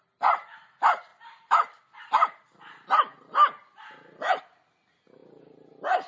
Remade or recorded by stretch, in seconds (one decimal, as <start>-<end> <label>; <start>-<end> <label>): 0.0-6.1 recorded